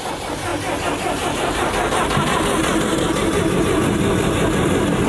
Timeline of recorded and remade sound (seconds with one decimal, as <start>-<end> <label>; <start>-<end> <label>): 0.0-5.1 recorded